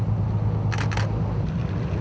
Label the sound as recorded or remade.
recorded